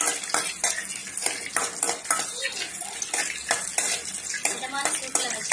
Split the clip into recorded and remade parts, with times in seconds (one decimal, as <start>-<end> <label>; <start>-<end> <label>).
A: 0.0-5.5 recorded